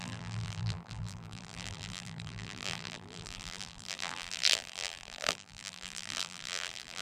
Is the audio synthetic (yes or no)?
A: yes